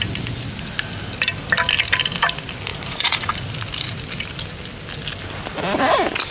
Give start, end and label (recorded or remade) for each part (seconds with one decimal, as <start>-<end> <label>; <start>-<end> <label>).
0.0-2.7 recorded; 2.7-3.3 remade; 3.3-6.3 recorded